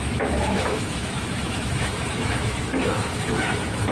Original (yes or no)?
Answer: no